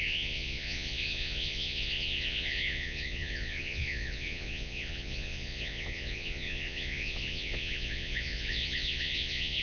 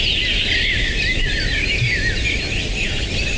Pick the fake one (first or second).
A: first